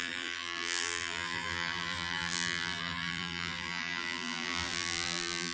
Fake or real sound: fake